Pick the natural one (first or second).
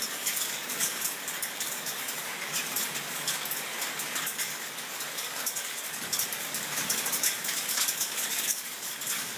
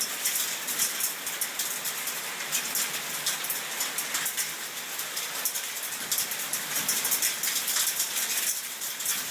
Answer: second